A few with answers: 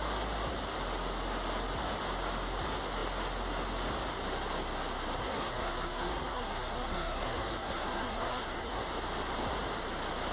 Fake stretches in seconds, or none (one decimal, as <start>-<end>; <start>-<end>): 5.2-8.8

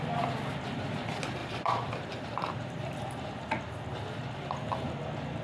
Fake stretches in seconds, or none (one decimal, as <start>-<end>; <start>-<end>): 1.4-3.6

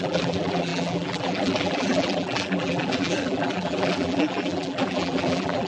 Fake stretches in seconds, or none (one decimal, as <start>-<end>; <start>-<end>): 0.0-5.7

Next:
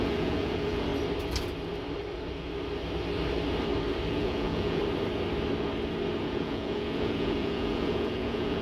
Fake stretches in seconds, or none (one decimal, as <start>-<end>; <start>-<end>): 0.0-0.9; 4.1-4.8; 6.2-8.6

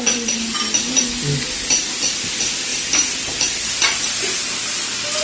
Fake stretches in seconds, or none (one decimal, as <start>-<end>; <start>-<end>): none

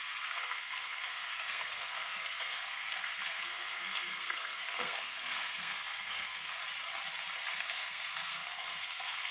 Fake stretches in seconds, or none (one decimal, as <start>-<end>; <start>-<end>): 0.0-6.6; 7.5-9.3

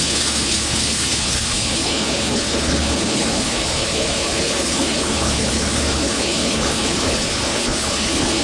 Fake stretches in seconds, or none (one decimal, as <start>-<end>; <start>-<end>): 0.0-8.4